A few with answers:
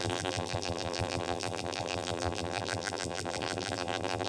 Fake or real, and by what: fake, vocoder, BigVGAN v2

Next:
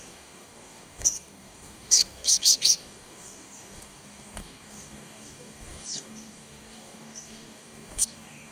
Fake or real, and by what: fake, codec, DAC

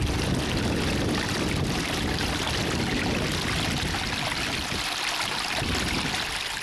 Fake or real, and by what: real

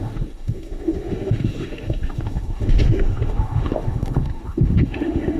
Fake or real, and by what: fake, autoencoder, DAC-VAE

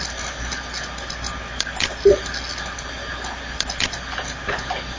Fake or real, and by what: real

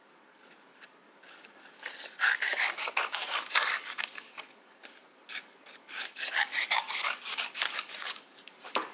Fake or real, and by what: fake, codec, DAC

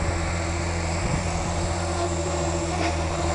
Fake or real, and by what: fake, vocoder, BigVGAN v2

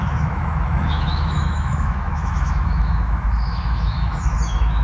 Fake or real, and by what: fake, autoencoder, DAC-VAE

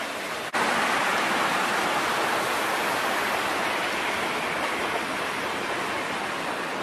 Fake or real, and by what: real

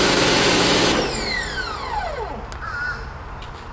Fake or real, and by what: real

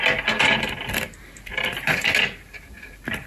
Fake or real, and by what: real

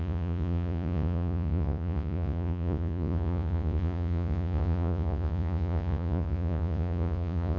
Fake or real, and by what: fake, vocoder, Vocos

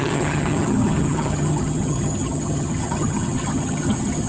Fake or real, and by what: fake, vocoder, HiFi-GAN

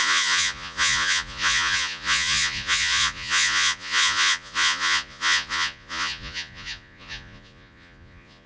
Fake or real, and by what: fake, vocoder, Vocos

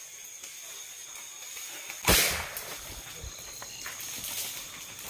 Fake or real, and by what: real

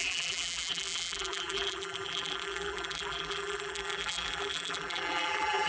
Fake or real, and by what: fake, vocoder, BigVGAN v2